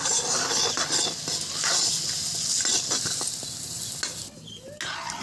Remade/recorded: recorded